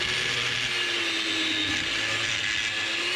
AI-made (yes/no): no